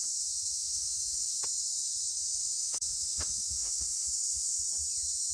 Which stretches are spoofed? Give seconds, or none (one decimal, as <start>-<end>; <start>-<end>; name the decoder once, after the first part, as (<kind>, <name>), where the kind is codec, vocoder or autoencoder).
0.6-1.4 (autoencoder, DAC-VAE); 2.4-4.6